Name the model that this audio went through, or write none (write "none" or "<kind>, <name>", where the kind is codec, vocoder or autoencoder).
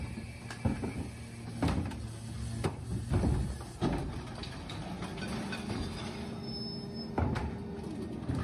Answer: none